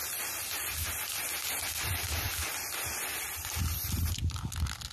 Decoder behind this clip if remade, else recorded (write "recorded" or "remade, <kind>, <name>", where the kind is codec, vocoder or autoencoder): recorded